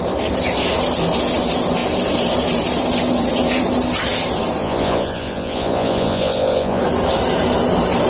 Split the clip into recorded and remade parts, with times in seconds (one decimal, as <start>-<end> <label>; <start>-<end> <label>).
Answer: 0.0-4.6 recorded; 4.6-6.8 remade; 6.8-8.1 recorded